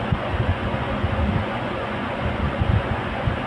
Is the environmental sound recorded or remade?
remade